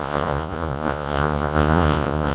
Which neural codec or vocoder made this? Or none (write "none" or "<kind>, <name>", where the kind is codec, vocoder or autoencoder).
vocoder, Vocos